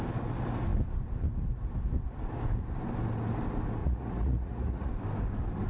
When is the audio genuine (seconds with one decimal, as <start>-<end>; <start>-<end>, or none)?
0.0-3.8; 4.9-5.7